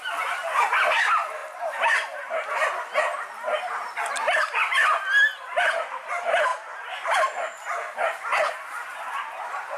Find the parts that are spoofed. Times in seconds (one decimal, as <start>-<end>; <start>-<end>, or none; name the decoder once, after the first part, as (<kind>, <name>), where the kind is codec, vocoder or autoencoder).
none